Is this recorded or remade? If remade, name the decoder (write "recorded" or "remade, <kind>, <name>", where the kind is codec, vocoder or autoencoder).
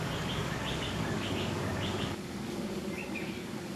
remade, codec, DAC